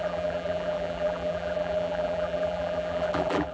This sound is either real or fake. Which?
fake